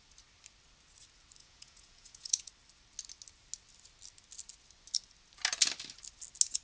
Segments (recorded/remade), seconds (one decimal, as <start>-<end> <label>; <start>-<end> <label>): 0.0-1.4 recorded; 1.4-2.5 remade; 2.5-6.6 recorded